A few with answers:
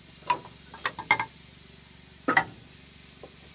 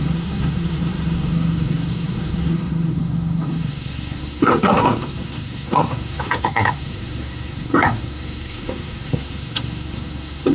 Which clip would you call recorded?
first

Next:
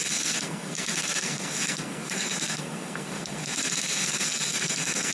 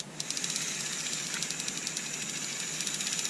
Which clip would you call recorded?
second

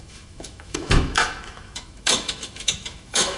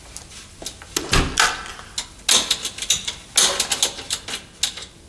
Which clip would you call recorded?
second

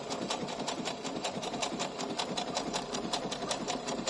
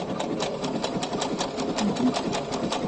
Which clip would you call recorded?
second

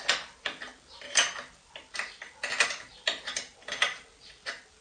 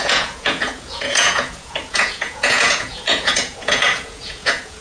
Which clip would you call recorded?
first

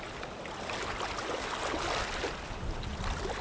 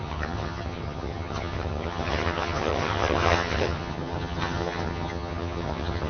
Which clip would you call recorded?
first